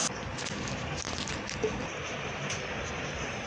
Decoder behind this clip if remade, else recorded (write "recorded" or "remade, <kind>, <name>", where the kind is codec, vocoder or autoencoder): recorded